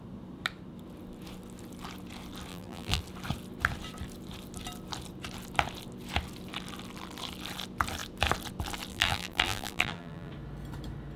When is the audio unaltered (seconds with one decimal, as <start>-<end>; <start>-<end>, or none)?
0.0-2.5; 3.0-8.9; 10.3-11.2